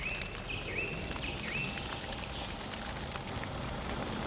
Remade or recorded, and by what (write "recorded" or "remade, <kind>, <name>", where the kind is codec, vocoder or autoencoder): recorded